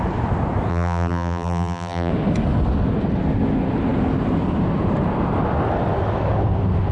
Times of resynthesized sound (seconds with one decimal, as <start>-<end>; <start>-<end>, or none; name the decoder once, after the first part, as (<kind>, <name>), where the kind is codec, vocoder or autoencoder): 0.7-2.1 (vocoder, BigVGAN v2)

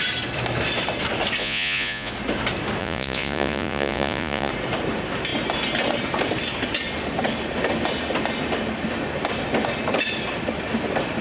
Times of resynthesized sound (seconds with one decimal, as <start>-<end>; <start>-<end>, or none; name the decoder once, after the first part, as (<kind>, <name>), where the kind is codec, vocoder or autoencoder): 1.4-2.1 (vocoder, Vocos); 2.8-4.5

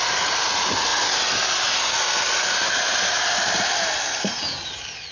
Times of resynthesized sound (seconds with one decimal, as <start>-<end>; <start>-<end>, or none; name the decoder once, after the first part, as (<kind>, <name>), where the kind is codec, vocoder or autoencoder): none